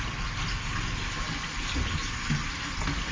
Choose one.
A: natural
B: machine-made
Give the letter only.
A